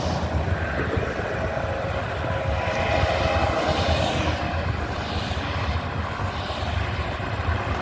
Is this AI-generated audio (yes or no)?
no